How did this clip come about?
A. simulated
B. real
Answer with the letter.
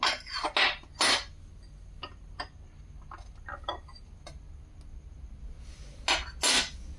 B